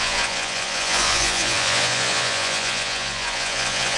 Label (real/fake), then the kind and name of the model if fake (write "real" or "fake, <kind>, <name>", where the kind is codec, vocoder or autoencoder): fake, vocoder, Vocos